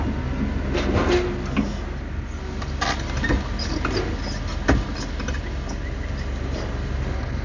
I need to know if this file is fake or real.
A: real